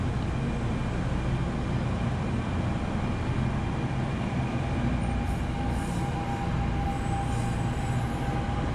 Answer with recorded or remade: recorded